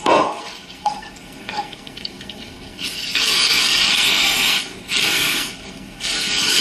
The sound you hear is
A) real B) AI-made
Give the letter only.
B